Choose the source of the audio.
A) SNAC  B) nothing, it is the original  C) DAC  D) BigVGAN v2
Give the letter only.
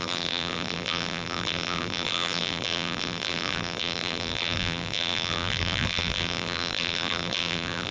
D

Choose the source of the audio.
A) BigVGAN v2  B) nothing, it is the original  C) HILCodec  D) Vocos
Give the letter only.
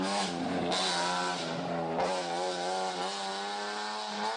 B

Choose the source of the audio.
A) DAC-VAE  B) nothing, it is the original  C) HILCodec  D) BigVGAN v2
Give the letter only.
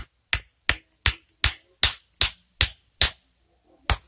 B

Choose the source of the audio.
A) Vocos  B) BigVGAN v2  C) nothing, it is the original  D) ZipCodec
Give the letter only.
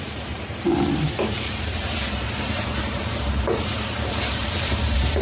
B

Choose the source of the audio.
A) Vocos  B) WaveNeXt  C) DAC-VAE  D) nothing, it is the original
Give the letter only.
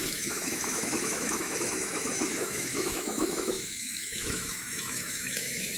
C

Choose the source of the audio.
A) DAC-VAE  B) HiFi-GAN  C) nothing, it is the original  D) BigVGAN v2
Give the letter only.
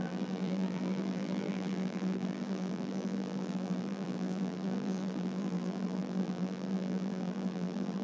D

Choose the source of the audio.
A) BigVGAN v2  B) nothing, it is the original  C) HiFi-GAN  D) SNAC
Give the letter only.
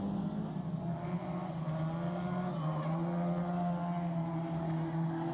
B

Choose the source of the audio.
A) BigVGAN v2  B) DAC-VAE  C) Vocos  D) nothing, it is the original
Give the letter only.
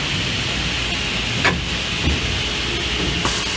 D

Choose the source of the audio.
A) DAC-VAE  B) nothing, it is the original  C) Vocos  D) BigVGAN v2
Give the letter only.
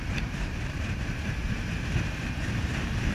D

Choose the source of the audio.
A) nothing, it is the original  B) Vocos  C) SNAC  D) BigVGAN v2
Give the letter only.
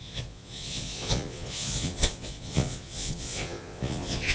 B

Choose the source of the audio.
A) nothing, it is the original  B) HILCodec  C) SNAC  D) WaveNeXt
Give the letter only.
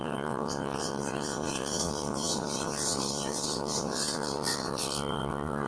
D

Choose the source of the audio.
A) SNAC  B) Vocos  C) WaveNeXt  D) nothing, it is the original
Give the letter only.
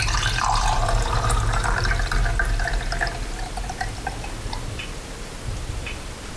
D